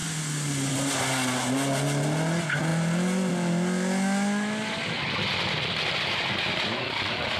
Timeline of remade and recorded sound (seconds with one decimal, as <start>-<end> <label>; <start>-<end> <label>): 0.0-7.4 recorded